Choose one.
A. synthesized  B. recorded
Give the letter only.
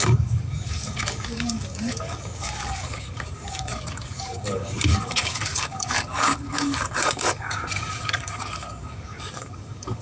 A